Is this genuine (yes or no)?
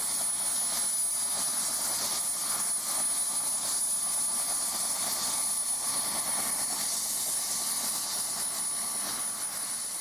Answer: yes